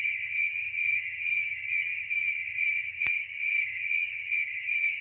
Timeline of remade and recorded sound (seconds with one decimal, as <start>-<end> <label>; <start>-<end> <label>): 0.0-5.0 remade

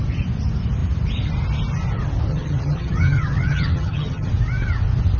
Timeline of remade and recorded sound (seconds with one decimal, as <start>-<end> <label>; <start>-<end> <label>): 0.0-2.3 recorded; 2.3-4.3 remade; 4.3-5.2 recorded

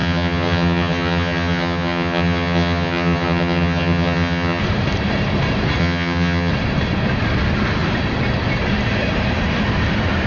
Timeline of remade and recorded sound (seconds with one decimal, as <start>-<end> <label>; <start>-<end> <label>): 0.0-4.6 remade; 4.6-5.8 recorded; 5.8-6.5 remade; 6.5-10.3 recorded

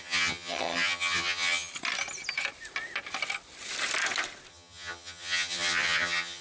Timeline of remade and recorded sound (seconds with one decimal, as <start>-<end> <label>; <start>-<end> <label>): 0.0-1.7 remade; 1.7-4.5 recorded; 4.5-6.4 remade

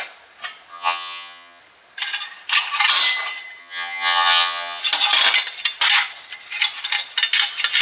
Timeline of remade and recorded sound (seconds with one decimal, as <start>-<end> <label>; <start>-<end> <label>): 0.0-0.7 recorded; 0.7-1.6 remade; 1.6-3.6 recorded; 3.6-4.8 remade; 4.8-7.8 recorded

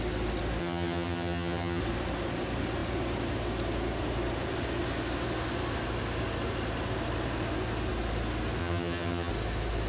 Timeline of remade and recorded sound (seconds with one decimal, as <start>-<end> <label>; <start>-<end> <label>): 0.0-0.6 recorded; 0.6-1.8 remade; 1.8-8.6 recorded; 8.6-9.3 remade; 9.3-9.9 recorded

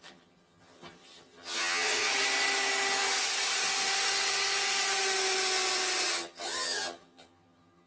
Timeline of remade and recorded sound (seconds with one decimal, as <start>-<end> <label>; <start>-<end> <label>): 0.0-2.1 remade; 2.1-6.1 recorded; 6.1-7.9 remade

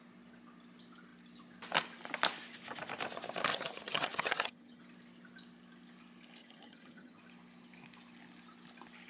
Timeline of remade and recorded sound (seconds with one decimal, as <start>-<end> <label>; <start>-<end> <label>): 0.0-3.5 recorded; 3.5-4.8 remade; 4.8-6.4 recorded; 6.4-7.2 remade; 7.2-9.1 recorded